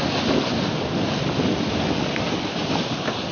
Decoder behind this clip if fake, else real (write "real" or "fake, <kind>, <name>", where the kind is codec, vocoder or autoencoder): real